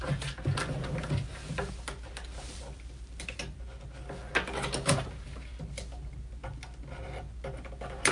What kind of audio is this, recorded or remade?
recorded